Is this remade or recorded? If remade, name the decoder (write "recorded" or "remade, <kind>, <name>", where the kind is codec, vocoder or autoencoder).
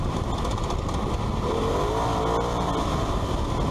recorded